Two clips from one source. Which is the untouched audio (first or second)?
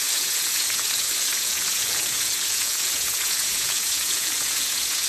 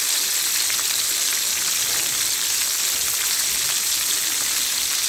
second